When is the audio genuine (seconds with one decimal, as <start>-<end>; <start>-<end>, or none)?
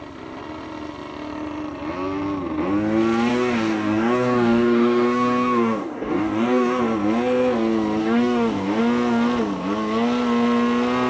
0.0-3.3; 6.8-8.0; 8.8-11.1